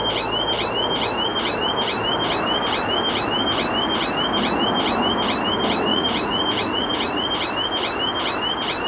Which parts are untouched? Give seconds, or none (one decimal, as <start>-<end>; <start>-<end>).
0.0-5.9; 7.3-8.9